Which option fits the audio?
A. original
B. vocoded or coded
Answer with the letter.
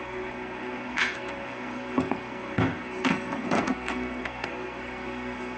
B